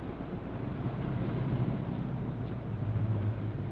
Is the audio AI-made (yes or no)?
yes